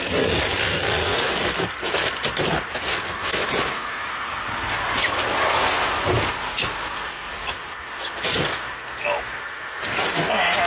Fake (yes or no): no